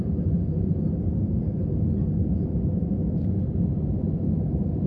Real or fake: real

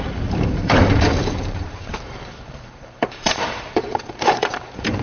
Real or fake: fake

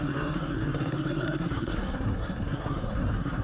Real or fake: fake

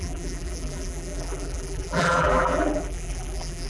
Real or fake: fake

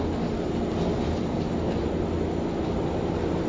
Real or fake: real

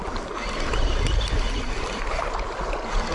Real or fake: real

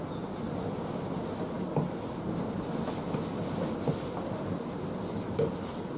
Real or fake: real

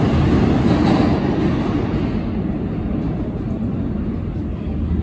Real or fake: real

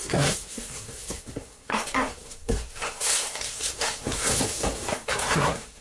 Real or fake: fake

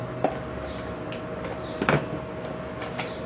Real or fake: real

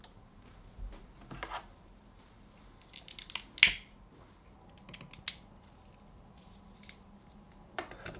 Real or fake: real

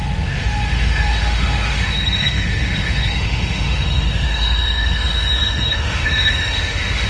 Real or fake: fake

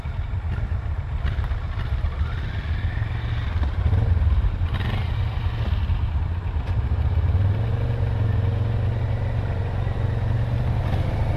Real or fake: real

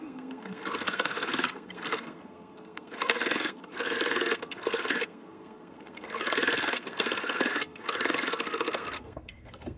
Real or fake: fake